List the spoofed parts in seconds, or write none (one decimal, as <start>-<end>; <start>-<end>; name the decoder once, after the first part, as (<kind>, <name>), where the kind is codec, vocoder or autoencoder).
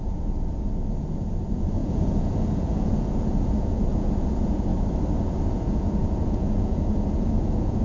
0.0-4.7 (vocoder, Vocos); 5.2-7.8